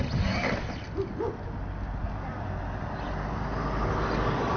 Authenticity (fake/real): real